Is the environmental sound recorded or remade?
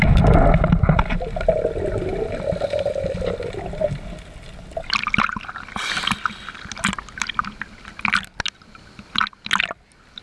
recorded